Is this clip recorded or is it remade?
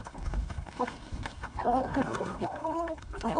remade